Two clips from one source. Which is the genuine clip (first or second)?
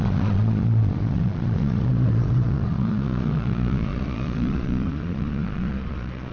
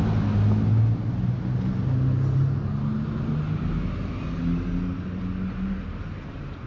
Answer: second